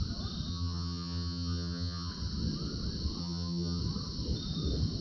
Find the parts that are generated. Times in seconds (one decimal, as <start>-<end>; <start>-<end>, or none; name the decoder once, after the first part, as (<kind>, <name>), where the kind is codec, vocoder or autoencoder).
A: 0.5-2.1 (vocoder, HiFi-GAN); 3.2-3.8